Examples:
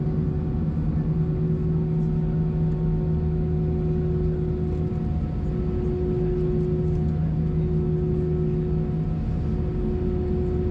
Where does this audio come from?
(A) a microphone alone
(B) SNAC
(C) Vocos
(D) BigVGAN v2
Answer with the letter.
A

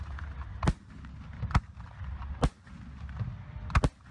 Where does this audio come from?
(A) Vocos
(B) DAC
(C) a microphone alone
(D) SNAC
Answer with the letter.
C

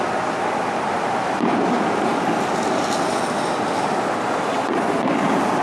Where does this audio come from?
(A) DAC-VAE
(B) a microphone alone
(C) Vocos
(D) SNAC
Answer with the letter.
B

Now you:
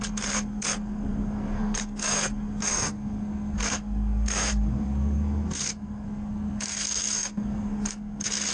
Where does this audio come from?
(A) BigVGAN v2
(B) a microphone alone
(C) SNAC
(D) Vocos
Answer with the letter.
C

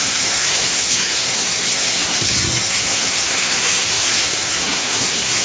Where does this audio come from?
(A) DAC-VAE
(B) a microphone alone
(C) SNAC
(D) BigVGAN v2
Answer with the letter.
C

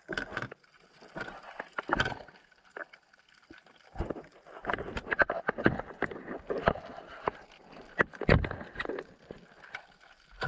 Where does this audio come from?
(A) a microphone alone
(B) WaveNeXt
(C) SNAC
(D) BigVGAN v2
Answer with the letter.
A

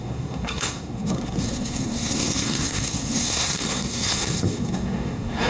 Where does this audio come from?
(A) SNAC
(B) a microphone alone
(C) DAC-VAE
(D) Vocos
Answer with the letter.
A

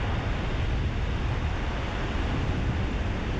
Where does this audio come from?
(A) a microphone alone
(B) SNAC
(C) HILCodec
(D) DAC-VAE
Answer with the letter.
A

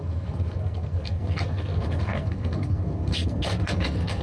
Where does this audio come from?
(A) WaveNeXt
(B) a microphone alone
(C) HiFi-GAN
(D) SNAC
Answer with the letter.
D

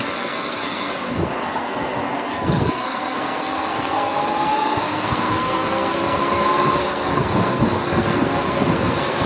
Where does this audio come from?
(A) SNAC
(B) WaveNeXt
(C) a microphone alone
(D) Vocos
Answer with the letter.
A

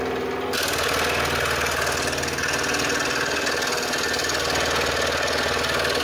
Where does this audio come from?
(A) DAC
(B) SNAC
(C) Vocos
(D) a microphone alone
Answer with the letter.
D